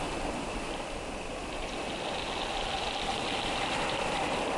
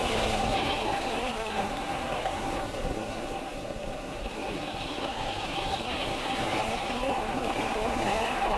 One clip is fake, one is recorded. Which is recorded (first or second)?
first